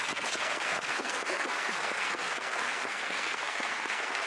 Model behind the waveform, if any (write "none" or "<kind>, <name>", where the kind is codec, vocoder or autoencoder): codec, SNAC